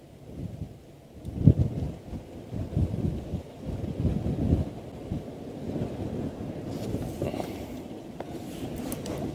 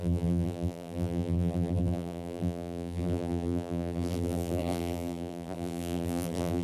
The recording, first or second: first